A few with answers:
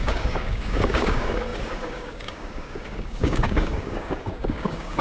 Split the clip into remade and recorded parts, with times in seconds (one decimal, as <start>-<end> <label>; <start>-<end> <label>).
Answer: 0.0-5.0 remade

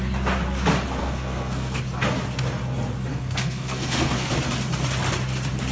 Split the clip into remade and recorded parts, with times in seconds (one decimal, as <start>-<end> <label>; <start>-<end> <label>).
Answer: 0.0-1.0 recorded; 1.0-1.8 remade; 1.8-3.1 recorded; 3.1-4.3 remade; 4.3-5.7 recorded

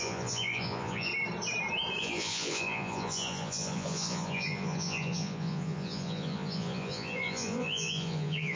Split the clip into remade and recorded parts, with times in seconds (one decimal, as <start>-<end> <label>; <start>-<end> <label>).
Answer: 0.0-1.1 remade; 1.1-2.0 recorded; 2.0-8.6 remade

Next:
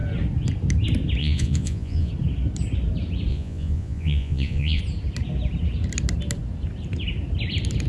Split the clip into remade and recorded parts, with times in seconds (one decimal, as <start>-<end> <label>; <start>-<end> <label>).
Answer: 0.0-1.2 recorded; 1.2-2.1 remade; 2.1-3.3 recorded; 3.3-4.8 remade; 4.8-7.9 recorded

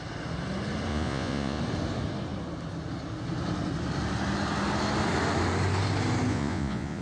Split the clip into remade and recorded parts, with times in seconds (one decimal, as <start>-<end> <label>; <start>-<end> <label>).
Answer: 0.0-0.9 recorded; 0.9-1.6 remade; 1.6-6.3 recorded; 6.3-7.0 remade